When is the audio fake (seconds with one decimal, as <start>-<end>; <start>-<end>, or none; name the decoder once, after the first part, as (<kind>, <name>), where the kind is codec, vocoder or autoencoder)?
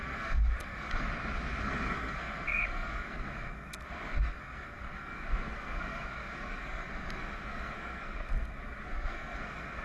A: 0.0-1.1 (codec, SNAC); 1.6-9.8